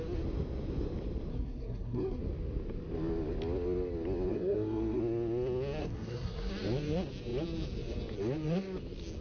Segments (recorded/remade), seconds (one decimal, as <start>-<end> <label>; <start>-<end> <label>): 0.0-1.3 recorded; 1.3-2.2 remade; 2.2-4.3 recorded; 4.3-5.0 remade; 5.0-5.8 recorded; 5.8-6.5 remade; 6.5-9.2 recorded